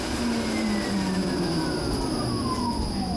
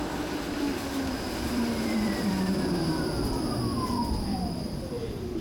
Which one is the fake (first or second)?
second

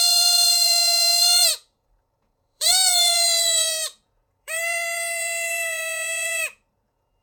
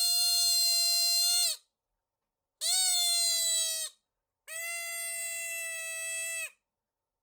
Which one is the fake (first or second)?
first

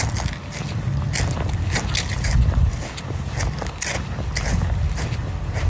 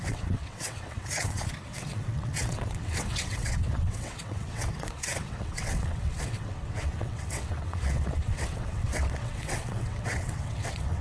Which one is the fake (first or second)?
second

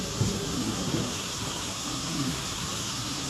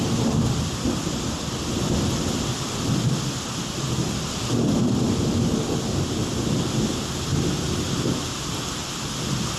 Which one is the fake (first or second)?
first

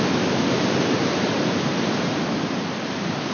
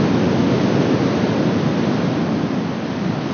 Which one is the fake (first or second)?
first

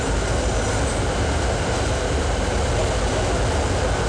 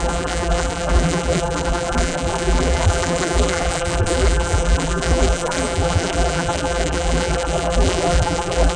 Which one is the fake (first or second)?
second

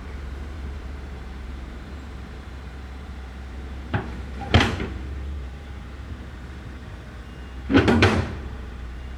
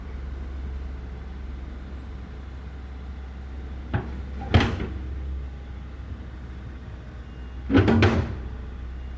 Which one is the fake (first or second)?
first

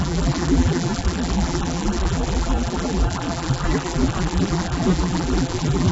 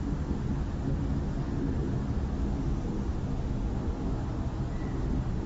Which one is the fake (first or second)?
first